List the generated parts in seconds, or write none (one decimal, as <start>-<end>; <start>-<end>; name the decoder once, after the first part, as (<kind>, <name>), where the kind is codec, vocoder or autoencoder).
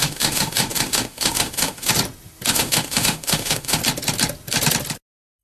0.0-1.9 (autoencoder, DAC-VAE); 2.5-3.8